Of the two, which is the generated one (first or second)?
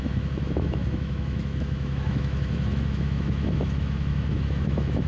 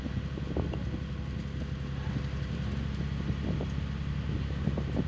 first